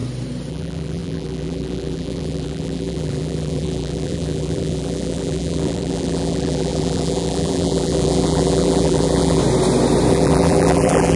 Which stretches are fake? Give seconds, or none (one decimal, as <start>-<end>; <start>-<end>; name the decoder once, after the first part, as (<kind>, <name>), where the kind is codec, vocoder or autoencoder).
0.5-9.4 (vocoder, BigVGAN v2); 10.1-11.2